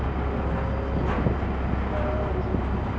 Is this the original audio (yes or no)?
yes